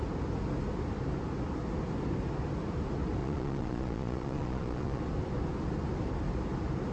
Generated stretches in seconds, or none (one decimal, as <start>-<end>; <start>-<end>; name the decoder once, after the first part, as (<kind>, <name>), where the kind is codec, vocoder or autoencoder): 3.2-5.0 (vocoder, Vocos)